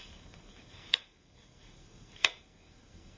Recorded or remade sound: remade